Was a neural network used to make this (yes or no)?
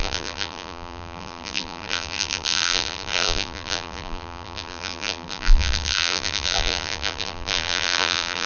yes